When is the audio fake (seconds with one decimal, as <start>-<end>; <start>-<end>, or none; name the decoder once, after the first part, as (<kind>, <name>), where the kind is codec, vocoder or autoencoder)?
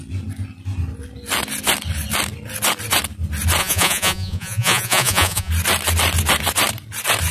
3.6-5.5 (vocoder, Vocos)